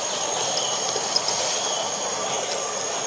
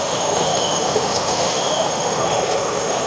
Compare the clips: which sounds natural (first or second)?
first